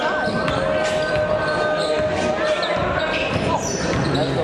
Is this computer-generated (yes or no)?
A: no